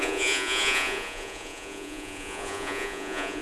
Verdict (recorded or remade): remade